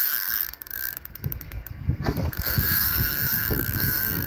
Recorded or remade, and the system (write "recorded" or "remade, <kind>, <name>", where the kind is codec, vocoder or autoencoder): remade, codec, SNAC